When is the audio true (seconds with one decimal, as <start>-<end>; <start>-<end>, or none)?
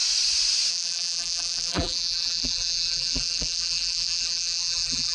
0.0-0.7